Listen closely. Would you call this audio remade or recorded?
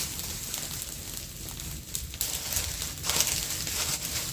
recorded